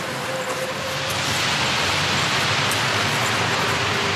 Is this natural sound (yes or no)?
yes